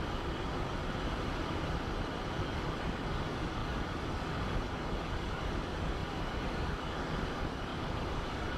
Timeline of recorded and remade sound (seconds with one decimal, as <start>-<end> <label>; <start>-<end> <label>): 0.0-0.8 remade; 0.8-2.4 recorded; 2.4-8.6 remade